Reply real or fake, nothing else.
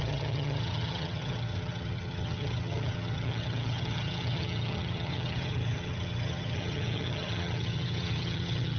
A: fake